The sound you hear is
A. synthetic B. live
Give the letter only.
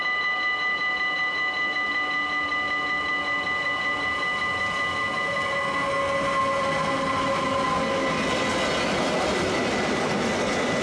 B